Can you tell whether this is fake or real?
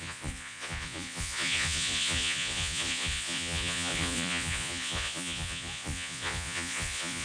fake